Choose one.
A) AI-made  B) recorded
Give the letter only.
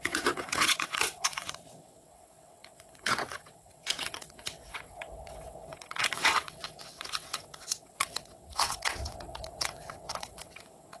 A